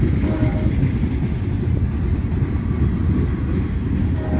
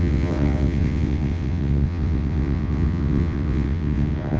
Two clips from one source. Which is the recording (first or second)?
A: first